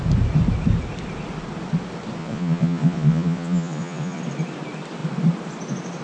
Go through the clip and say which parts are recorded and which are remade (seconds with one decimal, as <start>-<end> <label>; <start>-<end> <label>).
0.0-2.2 recorded; 2.2-4.2 remade; 4.2-6.0 recorded